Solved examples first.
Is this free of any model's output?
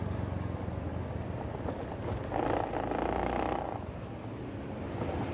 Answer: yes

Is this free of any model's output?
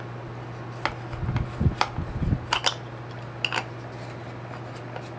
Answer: yes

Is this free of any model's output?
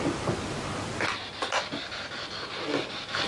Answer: yes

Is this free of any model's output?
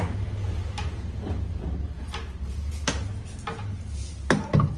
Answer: yes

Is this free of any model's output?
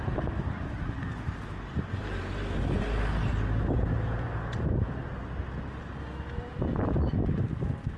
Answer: yes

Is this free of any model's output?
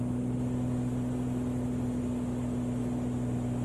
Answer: yes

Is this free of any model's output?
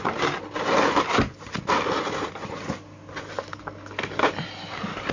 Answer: yes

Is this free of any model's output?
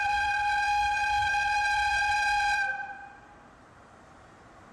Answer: no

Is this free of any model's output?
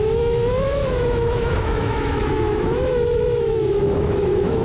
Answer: no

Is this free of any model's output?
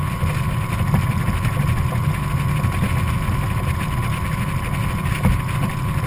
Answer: yes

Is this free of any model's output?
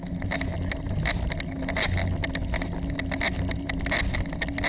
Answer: yes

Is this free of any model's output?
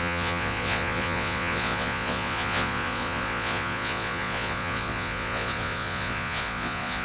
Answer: no